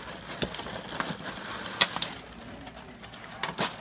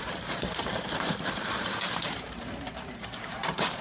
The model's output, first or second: second